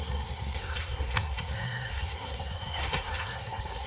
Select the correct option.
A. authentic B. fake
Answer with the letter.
B